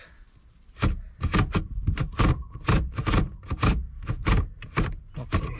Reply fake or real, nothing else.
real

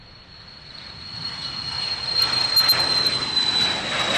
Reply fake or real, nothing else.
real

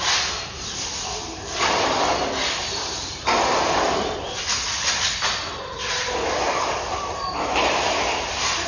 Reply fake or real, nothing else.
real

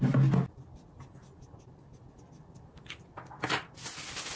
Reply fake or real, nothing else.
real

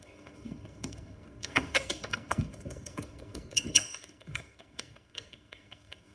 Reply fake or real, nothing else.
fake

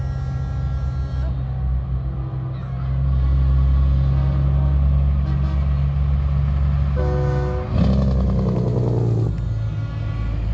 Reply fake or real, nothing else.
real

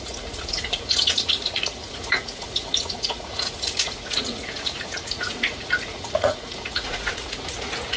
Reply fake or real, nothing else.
fake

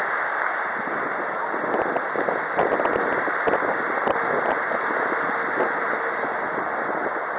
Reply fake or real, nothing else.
real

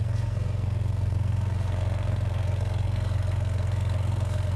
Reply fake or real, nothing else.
fake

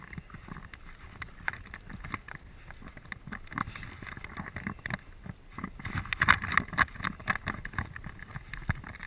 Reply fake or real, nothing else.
real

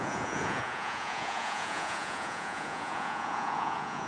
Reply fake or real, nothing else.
fake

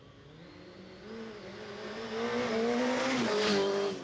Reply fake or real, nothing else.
real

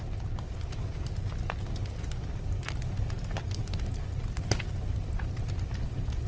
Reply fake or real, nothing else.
real